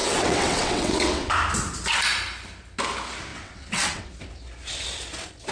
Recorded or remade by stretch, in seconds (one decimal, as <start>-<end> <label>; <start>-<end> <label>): 0.0-1.3 remade; 1.3-3.3 recorded; 3.3-4.1 remade; 4.1-5.5 recorded

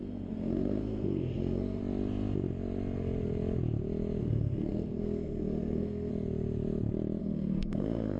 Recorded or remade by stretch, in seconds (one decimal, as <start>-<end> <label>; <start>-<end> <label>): 0.0-1.8 remade; 1.8-4.2 recorded; 4.2-6.1 remade; 6.1-7.2 recorded; 7.2-8.2 remade

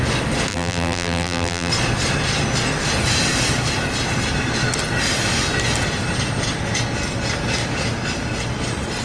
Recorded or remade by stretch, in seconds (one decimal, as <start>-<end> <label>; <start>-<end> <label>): 0.0-0.5 recorded; 0.5-1.7 remade; 1.7-9.0 recorded

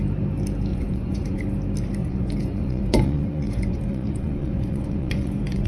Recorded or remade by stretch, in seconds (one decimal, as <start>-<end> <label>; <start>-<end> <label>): 0.0-0.7 recorded; 0.7-1.4 remade; 1.4-2.0 recorded; 2.0-5.7 remade